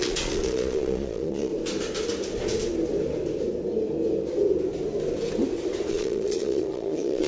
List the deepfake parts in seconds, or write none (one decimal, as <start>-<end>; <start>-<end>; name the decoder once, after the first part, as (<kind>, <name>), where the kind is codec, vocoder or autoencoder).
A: 0.0-1.5 (vocoder, Vocos); 5.9-7.3